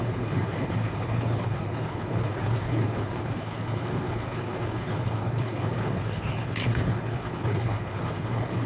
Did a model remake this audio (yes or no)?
yes